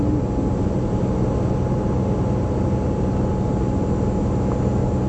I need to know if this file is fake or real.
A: real